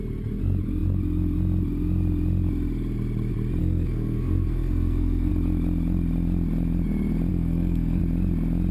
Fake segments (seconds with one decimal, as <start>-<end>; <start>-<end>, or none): 3.6-5.3; 7.3-8.0